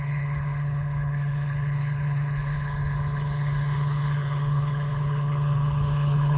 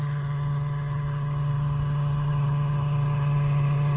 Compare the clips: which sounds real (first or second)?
second